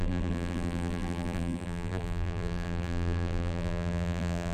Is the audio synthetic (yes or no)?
yes